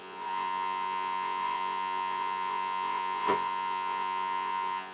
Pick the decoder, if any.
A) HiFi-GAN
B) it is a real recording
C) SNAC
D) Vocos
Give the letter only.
D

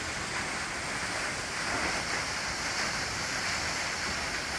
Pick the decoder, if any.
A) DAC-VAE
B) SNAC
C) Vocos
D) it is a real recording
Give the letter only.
D